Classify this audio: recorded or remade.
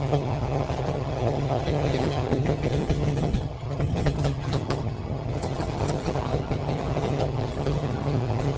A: remade